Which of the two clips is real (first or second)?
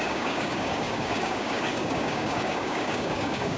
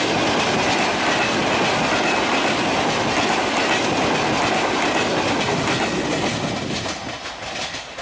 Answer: second